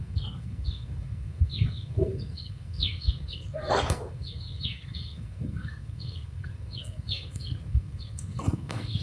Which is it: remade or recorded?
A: remade